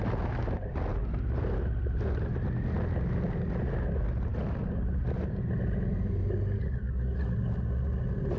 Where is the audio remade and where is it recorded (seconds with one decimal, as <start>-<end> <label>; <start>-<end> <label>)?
0.0-8.4 recorded